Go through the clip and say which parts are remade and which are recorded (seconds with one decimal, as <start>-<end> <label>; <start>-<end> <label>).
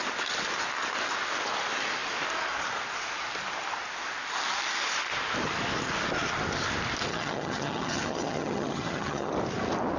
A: 0.0-7.1 recorded; 7.1-9.3 remade; 9.3-10.0 recorded